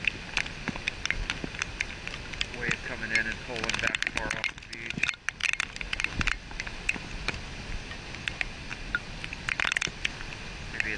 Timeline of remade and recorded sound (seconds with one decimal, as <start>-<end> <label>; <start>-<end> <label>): 0.0-11.0 recorded